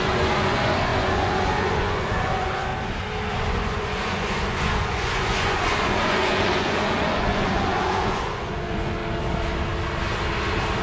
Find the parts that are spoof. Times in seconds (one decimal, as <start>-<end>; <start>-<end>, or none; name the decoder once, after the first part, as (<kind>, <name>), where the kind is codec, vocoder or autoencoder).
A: 0.0-2.7 (vocoder, Vocos); 3.3-9.0